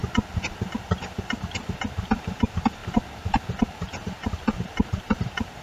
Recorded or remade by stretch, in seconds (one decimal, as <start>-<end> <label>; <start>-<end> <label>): 0.0-0.8 recorded; 0.8-2.8 remade; 2.8-3.6 recorded; 3.6-5.6 remade